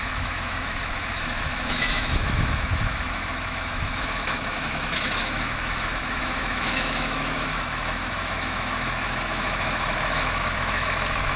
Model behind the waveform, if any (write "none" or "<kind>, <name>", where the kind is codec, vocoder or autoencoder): autoencoder, DAC-VAE